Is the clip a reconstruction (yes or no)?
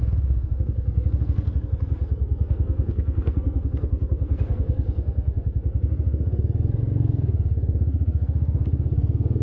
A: yes